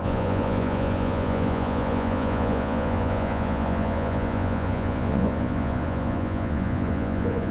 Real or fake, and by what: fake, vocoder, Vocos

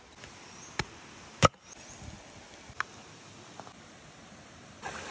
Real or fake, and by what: real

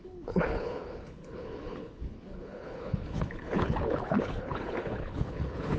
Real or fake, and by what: fake, codec, HILCodec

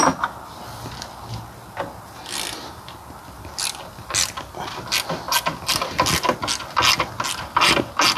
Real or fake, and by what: real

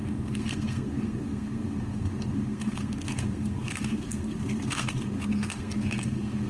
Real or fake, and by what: fake, codec, SNAC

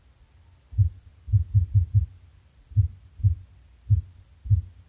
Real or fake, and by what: real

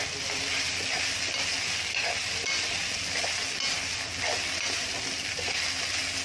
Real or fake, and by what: real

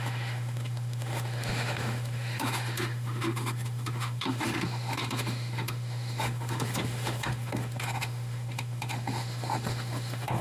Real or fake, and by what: fake, autoencoder, DAC-VAE